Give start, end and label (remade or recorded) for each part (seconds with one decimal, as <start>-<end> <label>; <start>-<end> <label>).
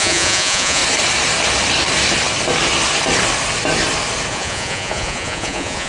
0.0-0.8 remade; 0.8-4.3 recorded; 4.3-5.9 remade